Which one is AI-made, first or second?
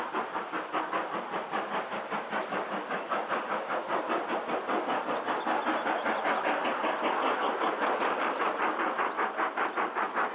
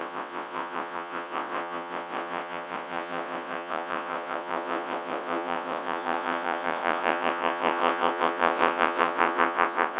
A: second